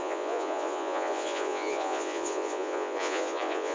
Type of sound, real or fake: fake